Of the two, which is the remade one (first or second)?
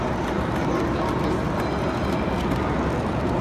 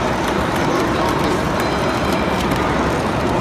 second